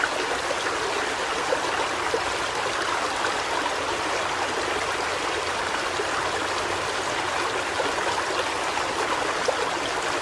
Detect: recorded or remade recorded